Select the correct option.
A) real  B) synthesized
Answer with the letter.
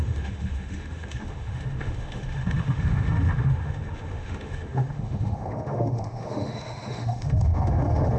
B